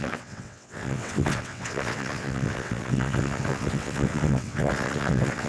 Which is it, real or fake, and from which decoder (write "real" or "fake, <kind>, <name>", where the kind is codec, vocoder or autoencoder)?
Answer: fake, vocoder, WaveNeXt